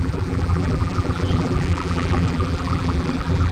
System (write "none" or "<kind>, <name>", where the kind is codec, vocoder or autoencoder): vocoder, BigVGAN v2